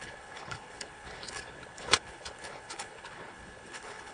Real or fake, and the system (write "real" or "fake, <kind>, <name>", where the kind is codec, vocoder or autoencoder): fake, codec, HILCodec